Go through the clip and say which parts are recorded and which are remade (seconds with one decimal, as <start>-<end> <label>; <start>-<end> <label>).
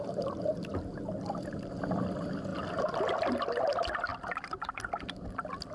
0.0-5.7 recorded